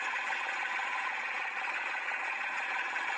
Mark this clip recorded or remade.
remade